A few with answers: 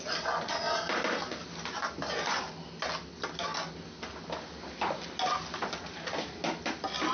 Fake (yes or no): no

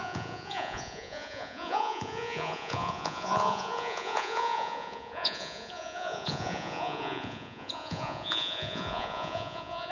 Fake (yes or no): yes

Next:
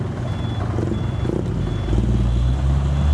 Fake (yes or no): no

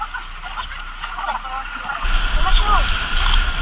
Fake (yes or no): no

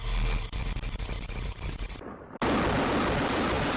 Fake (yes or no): no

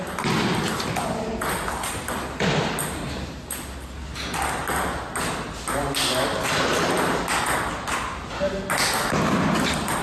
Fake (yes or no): no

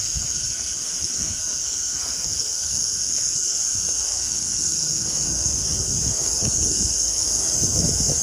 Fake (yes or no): yes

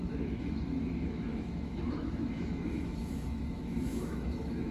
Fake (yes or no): yes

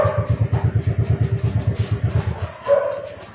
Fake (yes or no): no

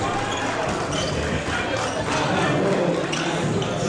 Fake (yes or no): no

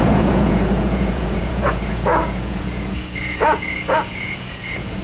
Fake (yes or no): yes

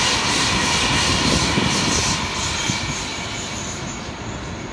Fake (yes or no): no